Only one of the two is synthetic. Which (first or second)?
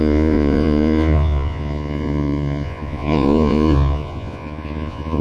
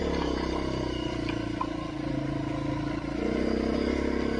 first